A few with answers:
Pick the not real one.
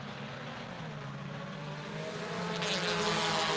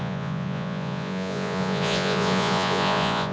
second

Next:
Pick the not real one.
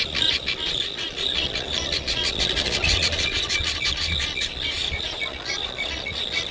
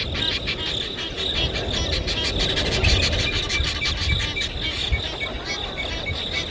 first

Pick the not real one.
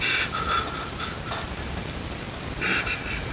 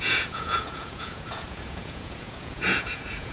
second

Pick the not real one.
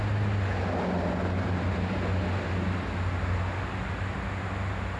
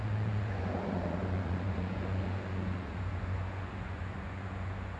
second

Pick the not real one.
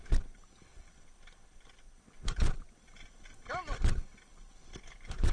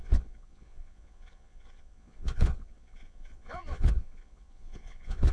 second